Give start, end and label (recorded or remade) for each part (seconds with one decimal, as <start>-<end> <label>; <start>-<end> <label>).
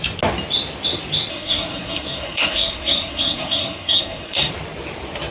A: 0.0-1.3 recorded; 1.3-4.5 remade; 4.5-5.3 recorded